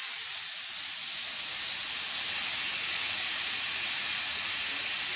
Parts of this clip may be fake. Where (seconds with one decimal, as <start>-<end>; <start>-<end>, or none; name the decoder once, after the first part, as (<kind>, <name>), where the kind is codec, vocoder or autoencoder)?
2.9-4.5 (vocoder, Vocos)